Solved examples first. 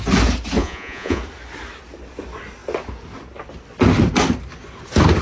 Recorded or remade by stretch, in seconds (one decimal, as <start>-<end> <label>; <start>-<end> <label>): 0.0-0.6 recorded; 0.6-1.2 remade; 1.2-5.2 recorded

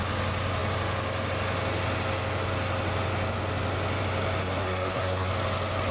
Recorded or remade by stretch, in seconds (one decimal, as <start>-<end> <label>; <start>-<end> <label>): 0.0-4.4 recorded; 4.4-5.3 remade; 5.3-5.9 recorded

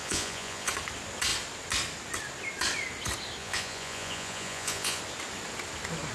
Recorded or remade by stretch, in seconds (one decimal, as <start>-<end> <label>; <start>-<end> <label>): 0.0-0.7 remade; 0.7-3.4 recorded; 3.4-5.0 remade; 5.0-6.1 recorded

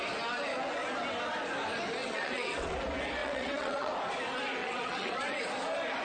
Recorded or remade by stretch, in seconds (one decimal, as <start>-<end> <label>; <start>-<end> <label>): 0.0-2.0 recorded; 2.0-2.7 remade; 2.7-3.2 recorded; 3.2-3.9 remade; 3.9-4.6 recorded; 4.6-5.4 remade; 5.4-6.0 recorded